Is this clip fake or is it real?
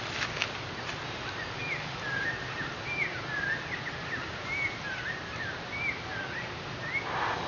real